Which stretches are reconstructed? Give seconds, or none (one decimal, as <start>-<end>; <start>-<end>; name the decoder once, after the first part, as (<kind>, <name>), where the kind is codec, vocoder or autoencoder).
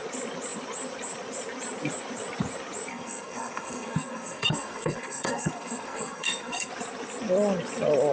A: 2.9-6.7 (codec, SNAC)